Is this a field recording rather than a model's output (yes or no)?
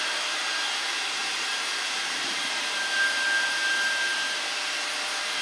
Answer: no